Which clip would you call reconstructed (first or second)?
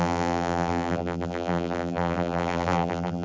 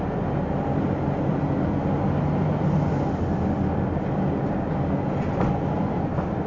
first